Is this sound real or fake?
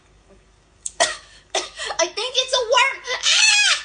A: fake